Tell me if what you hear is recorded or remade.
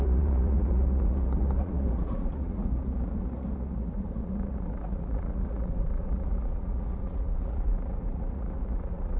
remade